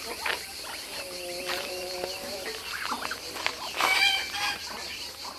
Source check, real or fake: real